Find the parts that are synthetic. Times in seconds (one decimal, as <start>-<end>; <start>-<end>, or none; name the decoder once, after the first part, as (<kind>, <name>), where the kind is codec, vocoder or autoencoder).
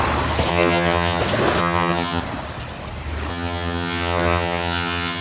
0.5-1.2 (vocoder, HiFi-GAN); 1.6-2.2; 3.3-5.2